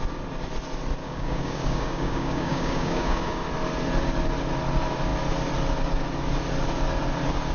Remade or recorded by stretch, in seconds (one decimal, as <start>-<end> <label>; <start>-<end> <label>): 0.0-1.0 recorded; 1.0-3.4 remade; 3.4-7.5 recorded